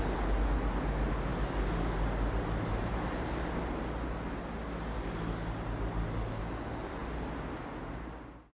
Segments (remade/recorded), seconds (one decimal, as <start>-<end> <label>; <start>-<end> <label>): 0.0-8.5 recorded